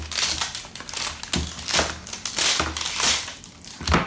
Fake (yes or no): no